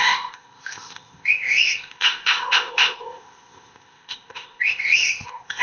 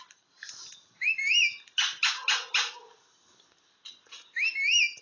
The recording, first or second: second